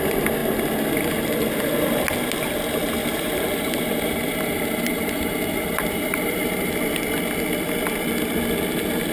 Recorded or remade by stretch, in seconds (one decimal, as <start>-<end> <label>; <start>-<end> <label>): 0.0-3.0 recorded; 3.0-6.7 remade; 6.7-9.1 recorded

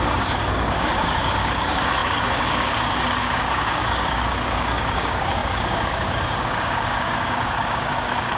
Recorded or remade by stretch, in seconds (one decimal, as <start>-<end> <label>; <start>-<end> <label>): 0.0-8.4 remade